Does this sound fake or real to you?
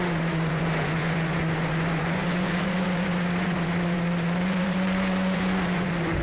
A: fake